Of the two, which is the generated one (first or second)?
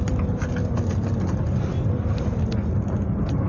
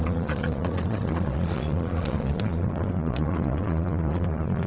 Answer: second